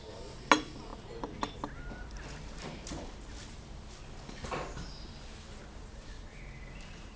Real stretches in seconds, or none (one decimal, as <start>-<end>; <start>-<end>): 0.0-7.2